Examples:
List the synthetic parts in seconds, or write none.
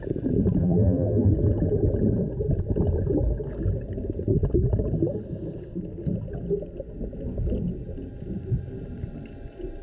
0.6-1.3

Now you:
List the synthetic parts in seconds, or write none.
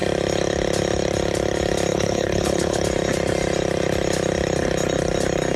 1.9-2.8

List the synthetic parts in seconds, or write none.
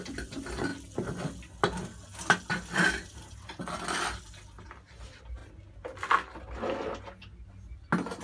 2.5-3.6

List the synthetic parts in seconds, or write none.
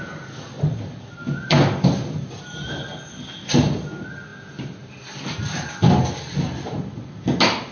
none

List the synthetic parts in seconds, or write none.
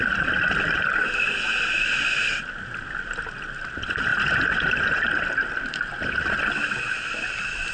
4.1-6.4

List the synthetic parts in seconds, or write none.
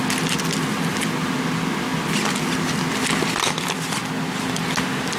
none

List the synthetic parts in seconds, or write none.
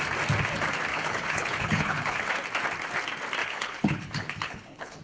0.9-2.3; 3.4-5.0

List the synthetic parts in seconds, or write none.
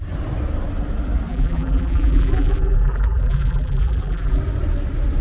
1.3-4.4